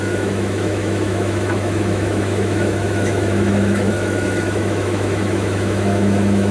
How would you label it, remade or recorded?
remade